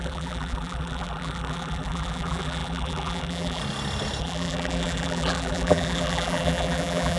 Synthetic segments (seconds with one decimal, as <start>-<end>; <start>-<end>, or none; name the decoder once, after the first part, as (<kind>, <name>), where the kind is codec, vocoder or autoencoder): 0.0-3.6 (vocoder, BigVGAN v2); 4.2-7.2